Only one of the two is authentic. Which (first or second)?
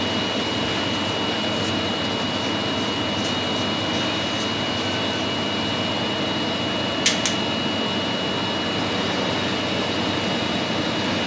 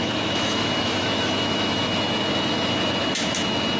first